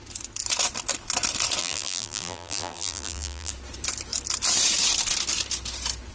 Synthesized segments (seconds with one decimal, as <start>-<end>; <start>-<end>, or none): 1.6-3.5